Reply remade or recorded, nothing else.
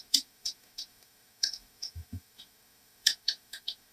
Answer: remade